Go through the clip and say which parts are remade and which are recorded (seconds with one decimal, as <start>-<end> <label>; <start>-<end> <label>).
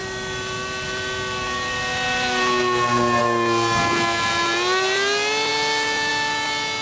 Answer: 0.0-6.8 recorded